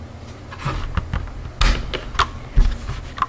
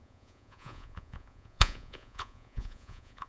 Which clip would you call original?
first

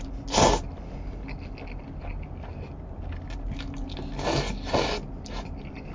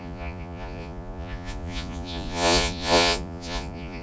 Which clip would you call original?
first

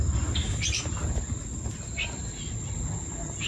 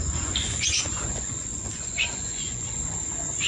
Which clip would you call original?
first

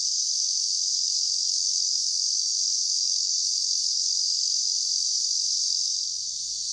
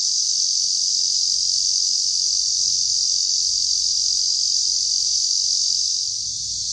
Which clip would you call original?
second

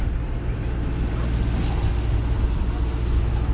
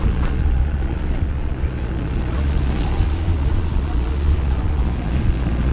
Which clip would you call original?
first